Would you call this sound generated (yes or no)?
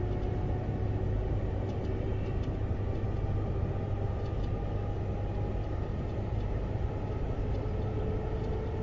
no